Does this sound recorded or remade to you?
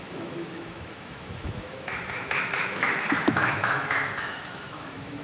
remade